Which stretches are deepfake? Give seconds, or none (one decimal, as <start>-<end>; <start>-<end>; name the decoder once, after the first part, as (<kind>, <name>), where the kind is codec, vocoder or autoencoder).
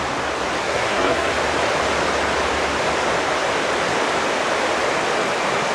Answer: 0.6-1.3 (codec, SNAC)